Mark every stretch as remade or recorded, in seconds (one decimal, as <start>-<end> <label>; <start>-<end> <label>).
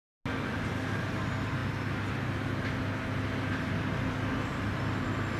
0.0-5.4 recorded